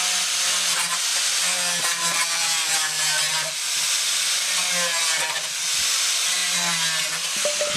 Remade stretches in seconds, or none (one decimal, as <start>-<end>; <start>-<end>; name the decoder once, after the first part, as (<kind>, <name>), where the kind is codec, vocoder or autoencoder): none